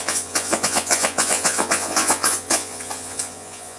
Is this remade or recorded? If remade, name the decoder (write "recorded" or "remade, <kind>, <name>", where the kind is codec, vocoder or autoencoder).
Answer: remade, vocoder, Vocos